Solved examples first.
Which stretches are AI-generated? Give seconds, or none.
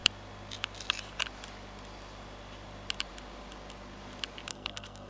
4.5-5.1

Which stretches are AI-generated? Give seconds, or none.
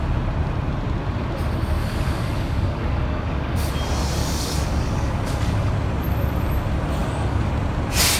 1.8-3.7; 4.2-5.7; 7.0-7.5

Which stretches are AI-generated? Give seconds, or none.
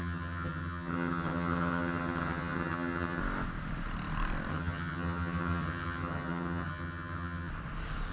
0.0-3.2; 4.5-7.5